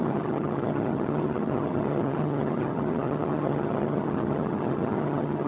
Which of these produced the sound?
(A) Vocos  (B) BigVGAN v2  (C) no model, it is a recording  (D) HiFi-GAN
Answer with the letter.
D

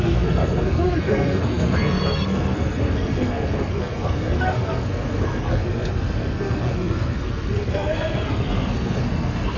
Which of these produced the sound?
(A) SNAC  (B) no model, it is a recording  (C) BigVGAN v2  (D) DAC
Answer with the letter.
A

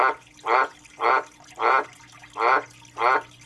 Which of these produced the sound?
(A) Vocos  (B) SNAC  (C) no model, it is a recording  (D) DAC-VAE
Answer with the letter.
C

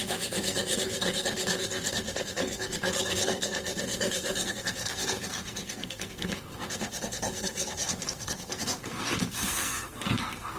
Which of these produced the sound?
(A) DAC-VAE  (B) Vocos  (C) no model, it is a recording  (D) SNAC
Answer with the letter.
D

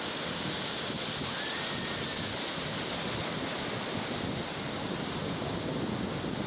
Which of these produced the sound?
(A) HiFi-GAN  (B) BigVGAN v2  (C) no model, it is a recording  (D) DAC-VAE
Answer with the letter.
C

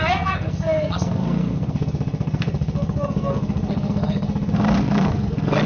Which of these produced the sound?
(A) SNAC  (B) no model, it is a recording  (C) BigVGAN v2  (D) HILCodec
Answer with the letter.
A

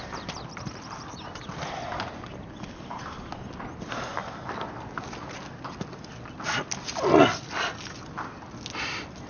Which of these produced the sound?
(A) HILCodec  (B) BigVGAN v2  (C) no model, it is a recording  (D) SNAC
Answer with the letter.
C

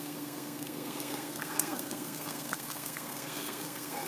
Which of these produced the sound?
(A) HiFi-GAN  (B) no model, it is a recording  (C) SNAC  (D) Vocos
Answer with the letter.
C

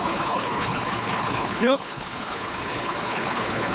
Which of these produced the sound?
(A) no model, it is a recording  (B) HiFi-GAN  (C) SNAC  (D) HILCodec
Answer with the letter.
D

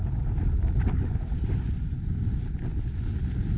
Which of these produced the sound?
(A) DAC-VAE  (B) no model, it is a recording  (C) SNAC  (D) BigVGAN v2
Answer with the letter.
B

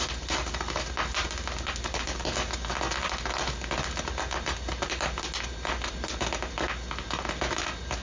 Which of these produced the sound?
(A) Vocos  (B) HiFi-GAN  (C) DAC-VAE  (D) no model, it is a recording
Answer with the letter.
D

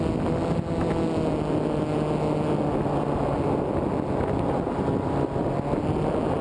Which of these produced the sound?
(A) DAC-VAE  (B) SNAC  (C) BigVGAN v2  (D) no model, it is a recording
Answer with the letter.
D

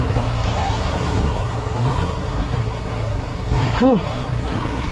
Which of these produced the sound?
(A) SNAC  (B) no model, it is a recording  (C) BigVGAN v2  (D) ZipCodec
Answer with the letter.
A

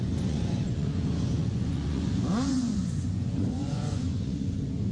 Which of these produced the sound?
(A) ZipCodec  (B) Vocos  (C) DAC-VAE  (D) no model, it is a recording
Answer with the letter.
B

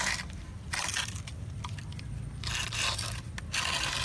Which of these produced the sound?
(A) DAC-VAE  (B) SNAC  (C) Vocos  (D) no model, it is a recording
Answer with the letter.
D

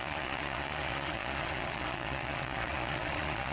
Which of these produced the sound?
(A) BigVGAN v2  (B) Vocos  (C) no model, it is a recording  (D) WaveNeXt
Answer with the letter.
B